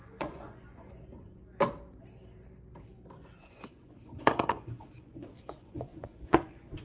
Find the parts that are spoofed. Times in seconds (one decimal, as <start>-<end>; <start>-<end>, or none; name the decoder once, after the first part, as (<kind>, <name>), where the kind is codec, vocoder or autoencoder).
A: 0.0-1.4 (vocoder, Vocos); 3.2-6.8

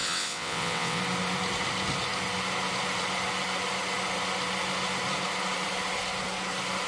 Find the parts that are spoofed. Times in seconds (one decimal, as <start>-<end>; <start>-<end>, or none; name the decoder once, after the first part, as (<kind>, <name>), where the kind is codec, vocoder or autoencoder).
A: 0.0-1.0 (vocoder, WaveNeXt)